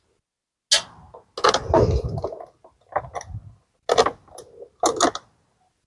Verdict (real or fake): real